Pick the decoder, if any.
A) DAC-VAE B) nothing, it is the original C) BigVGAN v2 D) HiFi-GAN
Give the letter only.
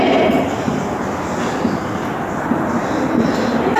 B